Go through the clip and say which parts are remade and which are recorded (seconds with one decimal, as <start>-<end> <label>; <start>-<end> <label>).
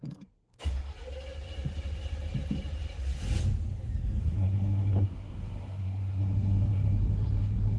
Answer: 0.0-0.9 remade; 0.9-4.2 recorded; 4.2-7.8 remade